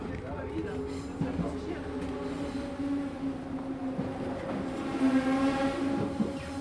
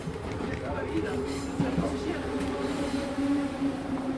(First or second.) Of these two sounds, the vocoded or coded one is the second